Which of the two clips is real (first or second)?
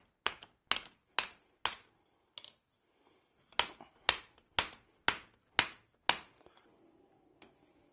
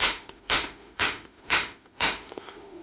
first